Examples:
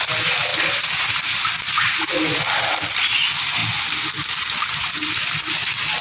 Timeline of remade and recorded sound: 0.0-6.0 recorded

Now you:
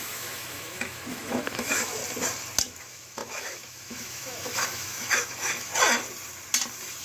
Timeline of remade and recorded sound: 0.0-2.0 remade; 2.0-2.6 recorded; 2.6-5.7 remade; 5.7-7.0 recorded

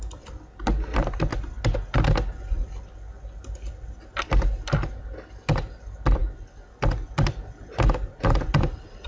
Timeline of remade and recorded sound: 0.0-9.1 recorded

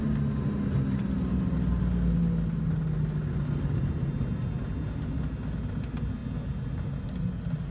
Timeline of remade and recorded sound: 0.0-7.7 recorded

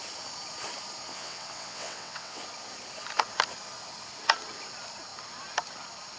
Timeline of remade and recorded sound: 0.0-1.1 recorded; 1.1-2.4 remade; 2.4-6.2 recorded